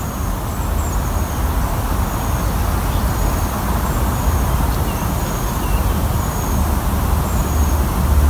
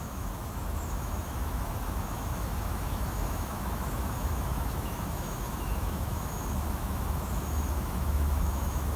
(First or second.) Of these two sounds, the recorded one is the first